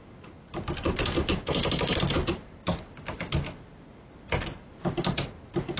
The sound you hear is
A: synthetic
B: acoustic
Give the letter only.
B